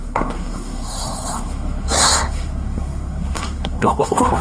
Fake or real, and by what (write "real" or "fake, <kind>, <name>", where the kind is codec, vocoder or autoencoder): fake, codec, SNAC